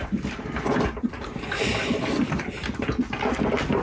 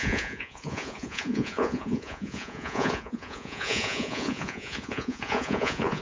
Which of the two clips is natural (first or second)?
first